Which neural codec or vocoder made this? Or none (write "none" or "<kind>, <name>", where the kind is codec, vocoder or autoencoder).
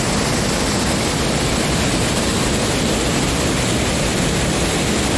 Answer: none